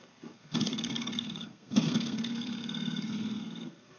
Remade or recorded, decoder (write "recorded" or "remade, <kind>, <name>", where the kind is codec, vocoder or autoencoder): remade, codec, SNAC